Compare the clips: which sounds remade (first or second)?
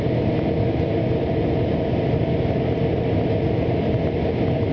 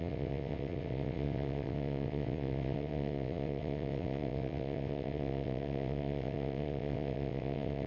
second